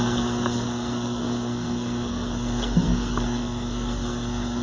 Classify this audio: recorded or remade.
remade